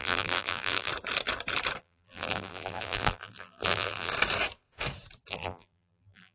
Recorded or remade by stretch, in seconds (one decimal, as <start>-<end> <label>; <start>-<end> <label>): 0.0-0.9 remade; 0.9-1.8 recorded; 1.8-4.1 remade; 4.1-5.3 recorded; 5.3-6.3 remade